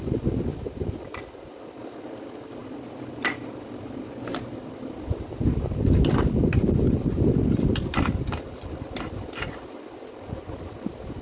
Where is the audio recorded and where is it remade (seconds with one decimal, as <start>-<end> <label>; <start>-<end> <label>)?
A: 0.0-11.2 recorded